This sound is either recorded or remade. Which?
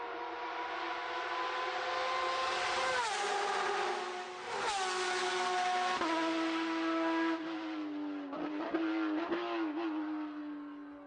recorded